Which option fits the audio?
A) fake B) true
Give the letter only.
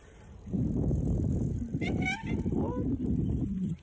A